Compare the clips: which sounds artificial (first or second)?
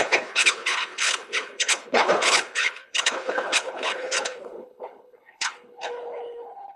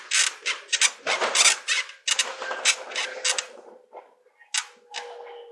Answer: first